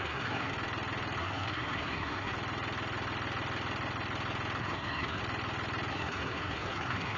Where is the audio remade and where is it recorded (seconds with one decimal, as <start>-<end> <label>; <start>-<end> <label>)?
0.0-0.5 remade; 0.5-1.2 recorded; 1.2-2.3 remade; 2.3-4.6 recorded; 4.6-5.2 remade; 5.2-5.9 recorded; 5.9-7.2 remade